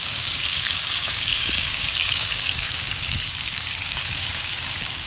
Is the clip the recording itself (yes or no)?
no